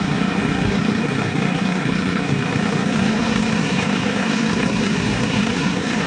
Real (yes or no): no